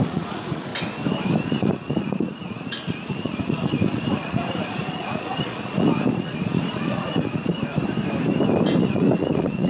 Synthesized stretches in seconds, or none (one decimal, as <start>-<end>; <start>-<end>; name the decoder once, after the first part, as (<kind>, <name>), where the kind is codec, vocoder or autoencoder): 0.0-0.7 (vocoder, Vocos); 1.5-7.5; 8.8-9.7